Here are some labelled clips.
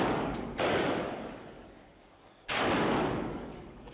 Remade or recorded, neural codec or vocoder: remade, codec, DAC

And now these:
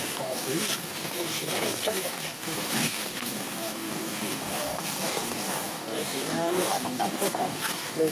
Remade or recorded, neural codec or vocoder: remade, codec, DAC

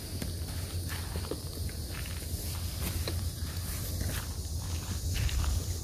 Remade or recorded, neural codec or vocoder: recorded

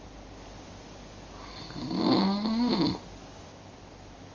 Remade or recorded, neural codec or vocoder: recorded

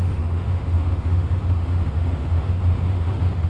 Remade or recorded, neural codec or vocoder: remade, autoencoder, DAC-VAE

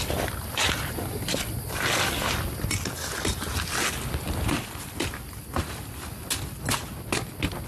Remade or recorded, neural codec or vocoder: recorded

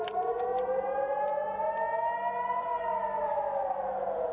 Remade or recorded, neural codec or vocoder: recorded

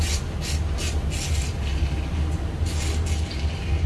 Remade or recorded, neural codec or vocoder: recorded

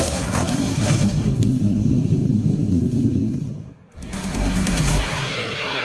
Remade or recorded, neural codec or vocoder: remade, codec, SNAC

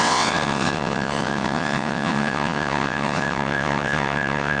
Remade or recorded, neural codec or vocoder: remade, vocoder, WaveNeXt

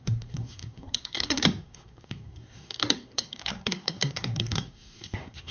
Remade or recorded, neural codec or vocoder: remade, codec, SNAC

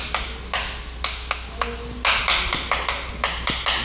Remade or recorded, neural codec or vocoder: recorded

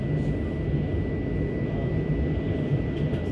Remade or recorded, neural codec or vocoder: recorded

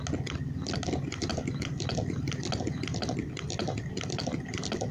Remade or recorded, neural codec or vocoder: recorded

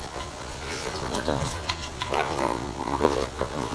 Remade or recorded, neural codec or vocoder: remade, vocoder, Vocos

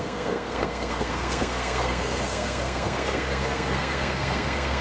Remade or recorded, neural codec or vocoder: remade, codec, SNAC